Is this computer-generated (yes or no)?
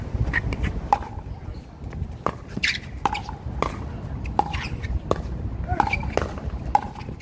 no